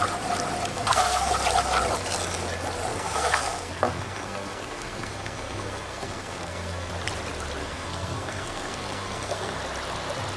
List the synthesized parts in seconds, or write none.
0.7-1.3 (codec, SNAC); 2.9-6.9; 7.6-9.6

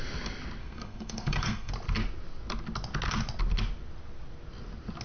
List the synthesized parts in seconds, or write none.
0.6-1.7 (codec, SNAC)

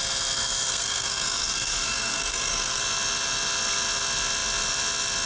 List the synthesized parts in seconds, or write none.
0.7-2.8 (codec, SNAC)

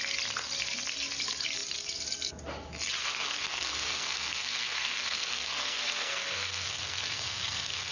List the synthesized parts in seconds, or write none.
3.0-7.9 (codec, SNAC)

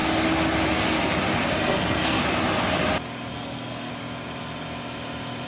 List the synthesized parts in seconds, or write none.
1.6-2.2 (codec, SNAC); 3.3-3.9